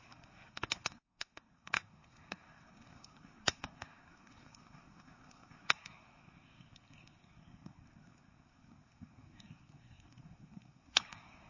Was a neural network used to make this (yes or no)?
yes